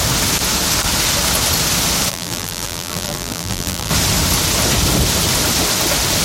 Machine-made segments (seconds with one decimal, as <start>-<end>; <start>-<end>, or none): 2.1-3.9